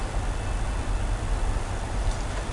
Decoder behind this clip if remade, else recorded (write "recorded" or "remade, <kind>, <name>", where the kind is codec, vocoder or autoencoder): recorded